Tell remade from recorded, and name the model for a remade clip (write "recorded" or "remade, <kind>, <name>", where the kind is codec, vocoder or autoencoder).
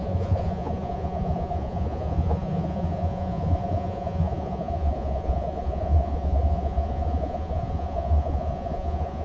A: remade, vocoder, Vocos